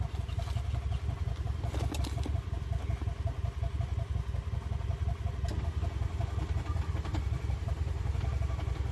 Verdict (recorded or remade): recorded